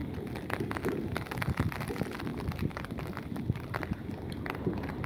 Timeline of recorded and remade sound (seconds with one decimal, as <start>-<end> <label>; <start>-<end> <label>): 0.0-0.7 remade; 0.7-2.3 recorded; 2.3-4.3 remade; 4.3-5.1 recorded